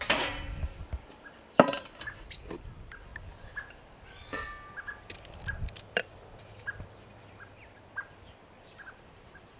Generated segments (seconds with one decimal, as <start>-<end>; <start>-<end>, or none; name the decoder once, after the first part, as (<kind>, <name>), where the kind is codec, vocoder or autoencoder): 0.0-3.1 (vocoder, BigVGAN v2); 5.8-9.6